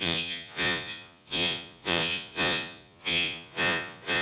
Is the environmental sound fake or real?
fake